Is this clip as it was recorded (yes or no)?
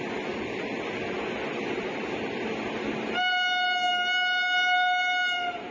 yes